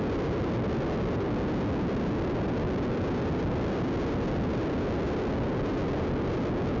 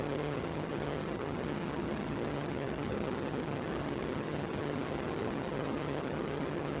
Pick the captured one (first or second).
first